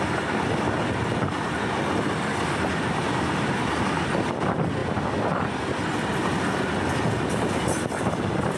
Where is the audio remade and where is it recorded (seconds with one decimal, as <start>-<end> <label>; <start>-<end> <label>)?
0.0-8.6 recorded